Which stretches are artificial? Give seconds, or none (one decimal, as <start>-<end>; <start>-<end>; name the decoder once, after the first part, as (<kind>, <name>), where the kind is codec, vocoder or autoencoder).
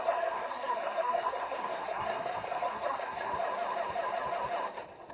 0.0-3.3 (codec, SNAC)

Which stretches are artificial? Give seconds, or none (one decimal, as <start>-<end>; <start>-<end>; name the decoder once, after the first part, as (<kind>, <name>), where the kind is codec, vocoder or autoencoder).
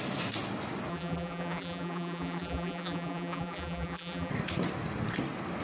0.9-4.3 (vocoder, BigVGAN v2)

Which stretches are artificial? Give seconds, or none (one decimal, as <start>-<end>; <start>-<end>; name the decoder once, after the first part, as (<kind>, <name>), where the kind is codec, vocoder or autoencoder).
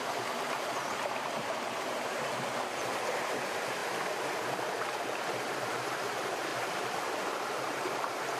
0.0-2.3 (vocoder, BigVGAN v2); 3.1-3.8; 4.5-6.5; 7.5-8.4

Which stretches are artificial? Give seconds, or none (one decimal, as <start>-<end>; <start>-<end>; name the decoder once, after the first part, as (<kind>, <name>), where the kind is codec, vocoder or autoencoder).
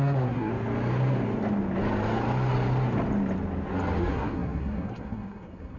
0.0-0.5 (codec, SNAC); 4.0-5.8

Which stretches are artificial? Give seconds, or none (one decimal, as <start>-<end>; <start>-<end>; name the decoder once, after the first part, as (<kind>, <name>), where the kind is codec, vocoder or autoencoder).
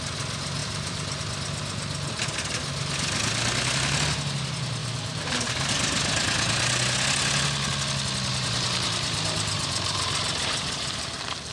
0.6-1.2 (vocoder, BigVGAN v2); 4.8-5.7; 8.3-11.0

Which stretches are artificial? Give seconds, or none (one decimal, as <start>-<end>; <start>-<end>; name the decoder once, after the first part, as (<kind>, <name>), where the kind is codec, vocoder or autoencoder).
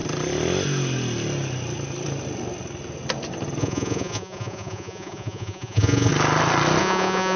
3.6-6.1 (vocoder, Vocos); 6.8-7.4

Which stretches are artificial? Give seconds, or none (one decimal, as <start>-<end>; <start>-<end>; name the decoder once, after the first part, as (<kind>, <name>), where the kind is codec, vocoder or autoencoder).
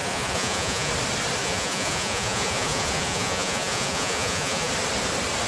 0.0-0.9 (vocoder, Vocos); 1.4-4.7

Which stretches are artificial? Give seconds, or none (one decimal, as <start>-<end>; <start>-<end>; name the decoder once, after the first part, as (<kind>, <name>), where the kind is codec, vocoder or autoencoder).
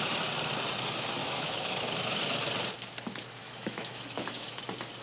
1.2-2.2 (autoencoder, DAC-VAE); 3.4-4.6